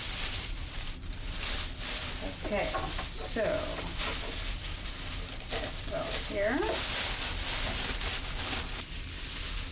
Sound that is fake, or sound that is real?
real